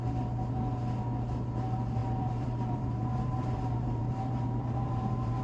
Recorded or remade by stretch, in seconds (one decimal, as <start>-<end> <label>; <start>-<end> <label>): 0.0-2.0 recorded; 2.0-5.4 remade